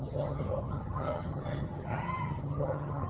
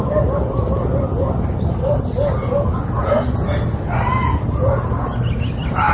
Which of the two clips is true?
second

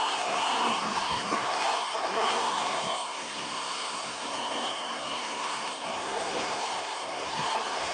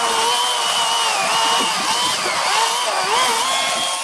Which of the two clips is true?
second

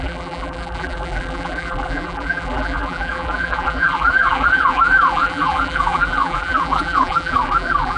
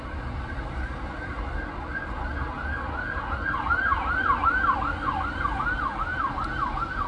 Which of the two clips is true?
second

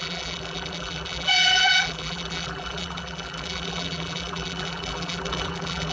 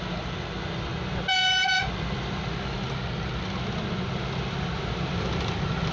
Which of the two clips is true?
second